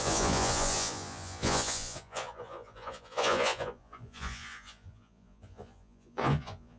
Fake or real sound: fake